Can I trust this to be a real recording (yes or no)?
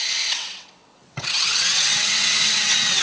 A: no